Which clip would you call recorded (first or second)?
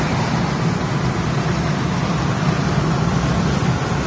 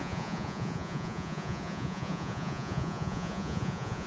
first